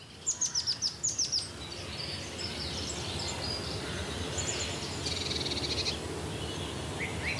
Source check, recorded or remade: recorded